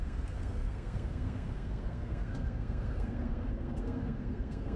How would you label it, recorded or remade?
remade